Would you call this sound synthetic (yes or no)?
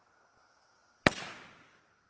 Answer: no